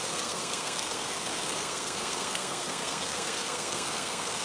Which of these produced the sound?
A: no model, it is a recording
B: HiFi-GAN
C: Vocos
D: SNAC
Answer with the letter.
D